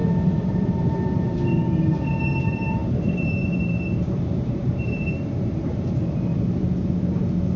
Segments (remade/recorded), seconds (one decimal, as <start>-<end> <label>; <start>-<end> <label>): 0.0-0.5 recorded; 0.5-7.6 remade